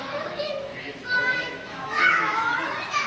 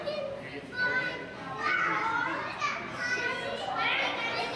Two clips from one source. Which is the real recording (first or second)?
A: second